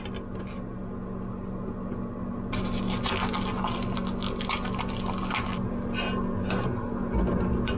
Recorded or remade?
recorded